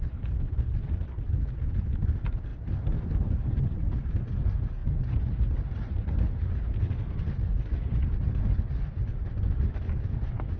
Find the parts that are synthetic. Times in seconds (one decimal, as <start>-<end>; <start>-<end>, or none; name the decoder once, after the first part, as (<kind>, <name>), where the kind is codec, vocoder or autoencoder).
none